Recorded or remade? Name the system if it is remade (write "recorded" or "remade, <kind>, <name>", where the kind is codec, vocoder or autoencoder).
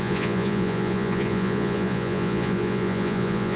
remade, vocoder, Vocos